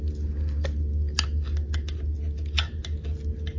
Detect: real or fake real